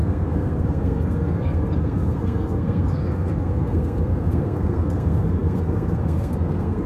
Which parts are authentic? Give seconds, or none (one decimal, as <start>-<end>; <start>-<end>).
none